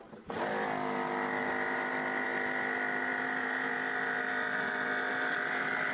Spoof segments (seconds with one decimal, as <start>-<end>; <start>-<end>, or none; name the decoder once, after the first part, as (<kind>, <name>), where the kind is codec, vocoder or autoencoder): none

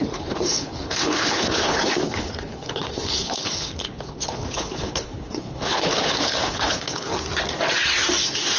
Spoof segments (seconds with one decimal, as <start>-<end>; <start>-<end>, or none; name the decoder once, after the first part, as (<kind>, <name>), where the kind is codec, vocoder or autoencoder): 0.0-7.1 (codec, HILCodec); 8.2-8.6

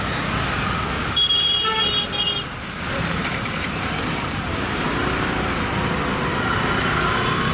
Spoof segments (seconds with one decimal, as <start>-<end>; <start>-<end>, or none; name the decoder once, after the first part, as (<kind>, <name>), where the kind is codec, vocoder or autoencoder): 1.3-4.3 (vocoder, BigVGAN v2)